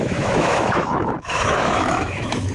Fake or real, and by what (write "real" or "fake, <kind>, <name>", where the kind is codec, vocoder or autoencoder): fake, autoencoder, DAC-VAE